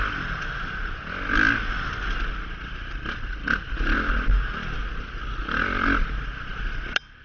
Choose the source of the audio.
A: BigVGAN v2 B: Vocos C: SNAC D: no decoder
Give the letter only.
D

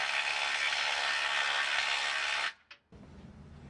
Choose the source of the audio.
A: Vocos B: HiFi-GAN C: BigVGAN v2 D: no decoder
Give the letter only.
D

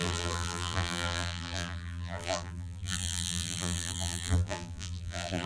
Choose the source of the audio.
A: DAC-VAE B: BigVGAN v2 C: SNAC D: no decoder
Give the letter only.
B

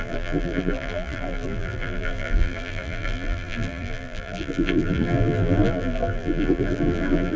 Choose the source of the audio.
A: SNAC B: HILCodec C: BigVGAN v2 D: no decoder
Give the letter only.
C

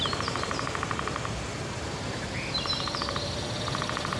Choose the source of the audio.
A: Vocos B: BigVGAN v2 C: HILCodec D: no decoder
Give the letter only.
B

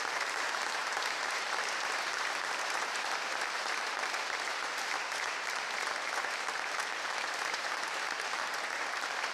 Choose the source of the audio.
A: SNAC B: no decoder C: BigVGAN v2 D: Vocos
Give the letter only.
C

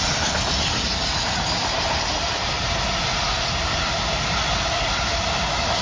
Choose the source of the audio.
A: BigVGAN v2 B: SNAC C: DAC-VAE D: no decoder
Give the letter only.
D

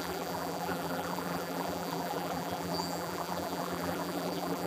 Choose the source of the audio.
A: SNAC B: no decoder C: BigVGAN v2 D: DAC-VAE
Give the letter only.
C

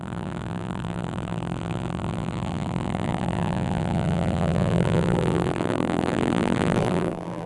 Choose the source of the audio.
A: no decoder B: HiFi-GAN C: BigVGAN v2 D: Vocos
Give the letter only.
C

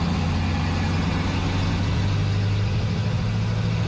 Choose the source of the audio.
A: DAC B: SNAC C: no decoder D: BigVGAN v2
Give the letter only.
C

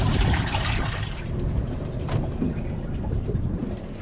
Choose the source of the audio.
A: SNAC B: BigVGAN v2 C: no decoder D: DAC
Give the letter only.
B